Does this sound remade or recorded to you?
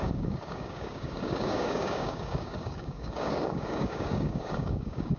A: remade